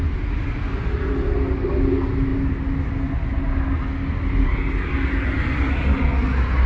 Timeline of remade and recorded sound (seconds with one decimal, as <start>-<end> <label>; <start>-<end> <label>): 0.0-6.7 recorded